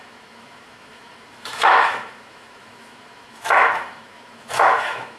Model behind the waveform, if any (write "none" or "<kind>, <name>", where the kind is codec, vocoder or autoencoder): autoencoder, DAC-VAE